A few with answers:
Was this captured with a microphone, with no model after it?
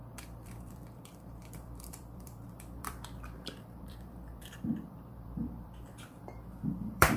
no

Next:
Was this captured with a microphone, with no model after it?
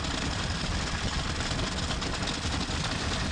yes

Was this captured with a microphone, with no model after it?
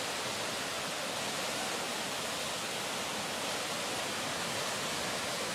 yes